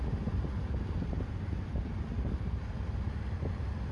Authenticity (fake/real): real